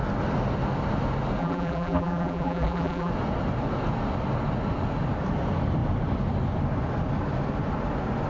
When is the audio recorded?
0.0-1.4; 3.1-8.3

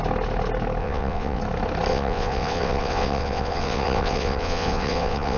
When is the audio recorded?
0.0-0.8; 1.4-1.9

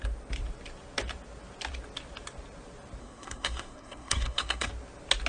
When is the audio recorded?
0.0-3.0; 4.7-5.3

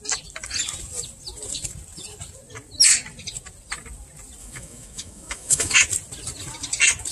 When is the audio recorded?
0.0-4.4; 5.8-7.1

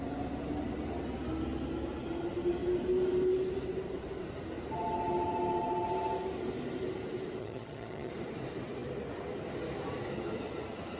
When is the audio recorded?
0.0-7.4; 8.1-11.0

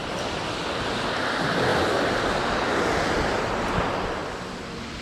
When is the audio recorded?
0.6-5.0

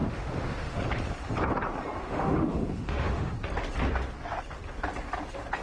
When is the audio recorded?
0.8-2.0; 3.3-5.6